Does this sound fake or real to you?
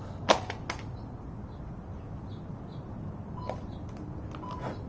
real